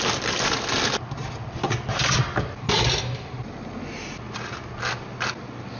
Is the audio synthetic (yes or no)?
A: no